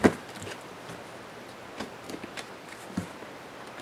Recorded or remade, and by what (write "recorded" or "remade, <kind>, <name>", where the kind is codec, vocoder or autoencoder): recorded